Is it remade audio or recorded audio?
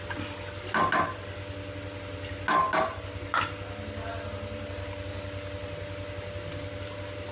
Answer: recorded